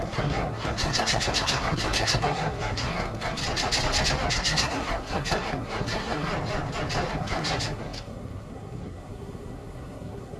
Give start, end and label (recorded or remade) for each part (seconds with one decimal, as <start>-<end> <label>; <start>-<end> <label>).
0.0-3.4 remade; 3.4-4.3 recorded; 4.3-6.3 remade; 6.3-7.1 recorded; 7.1-10.4 remade